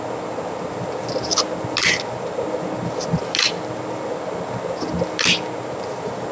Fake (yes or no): no